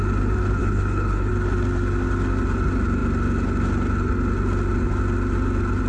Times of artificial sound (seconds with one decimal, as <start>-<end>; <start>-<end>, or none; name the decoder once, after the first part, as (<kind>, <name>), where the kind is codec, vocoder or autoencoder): 0.6-1.3 (codec, HILCodec)